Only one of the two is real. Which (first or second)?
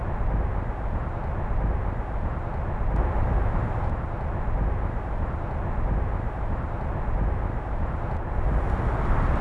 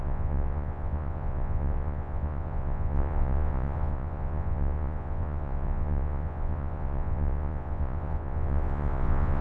first